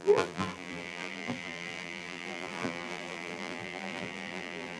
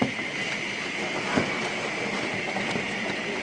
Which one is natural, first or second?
second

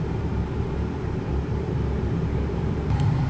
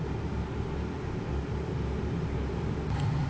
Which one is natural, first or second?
second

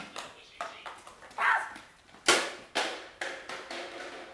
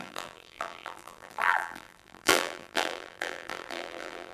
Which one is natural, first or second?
first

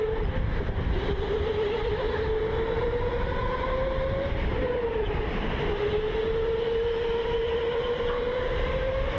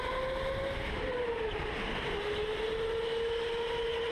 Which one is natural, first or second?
second